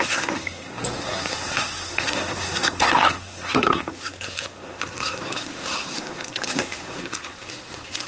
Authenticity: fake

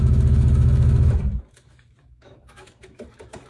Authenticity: fake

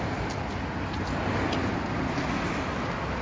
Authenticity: real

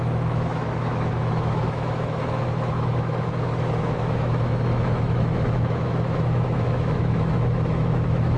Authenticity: fake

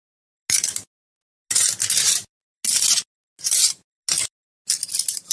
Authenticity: real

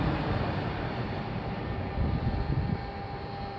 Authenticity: fake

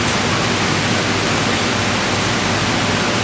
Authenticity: real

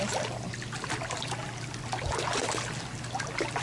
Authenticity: real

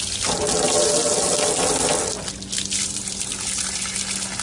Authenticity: real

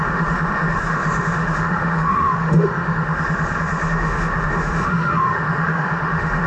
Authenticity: fake